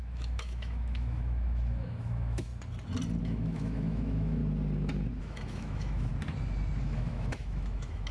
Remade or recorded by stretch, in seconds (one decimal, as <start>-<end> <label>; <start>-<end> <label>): 0.0-2.5 remade; 2.5-3.2 recorded; 3.2-4.4 remade; 4.4-5.2 recorded; 5.2-6.1 remade; 6.1-6.8 recorded; 6.8-8.1 remade